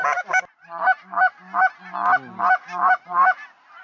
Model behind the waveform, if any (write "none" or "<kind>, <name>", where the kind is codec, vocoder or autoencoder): none